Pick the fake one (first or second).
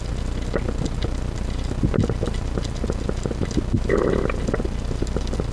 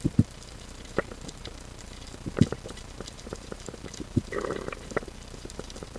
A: second